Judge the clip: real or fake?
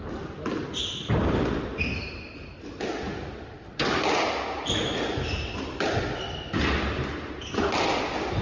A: real